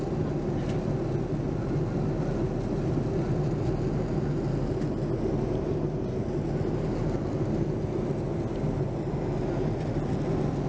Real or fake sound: real